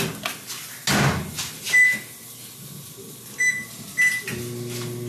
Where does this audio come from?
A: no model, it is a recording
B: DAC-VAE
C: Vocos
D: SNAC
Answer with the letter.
A